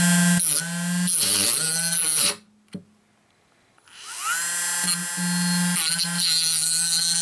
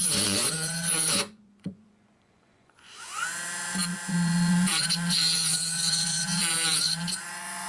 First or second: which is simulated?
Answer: second